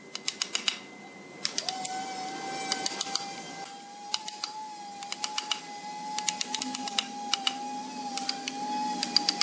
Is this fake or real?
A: real